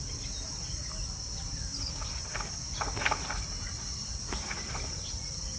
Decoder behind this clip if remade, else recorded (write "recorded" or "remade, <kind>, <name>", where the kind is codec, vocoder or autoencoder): recorded